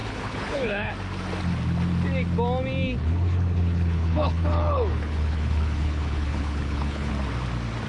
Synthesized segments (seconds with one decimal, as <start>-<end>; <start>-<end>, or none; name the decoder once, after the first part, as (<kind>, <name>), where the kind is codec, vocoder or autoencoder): 0.0-0.9 (codec, HILCodec); 3.0-7.1

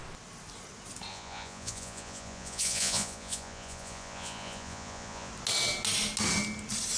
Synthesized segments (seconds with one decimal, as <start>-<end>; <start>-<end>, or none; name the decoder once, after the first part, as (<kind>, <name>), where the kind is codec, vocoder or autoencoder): 1.1-5.3 (vocoder, Vocos)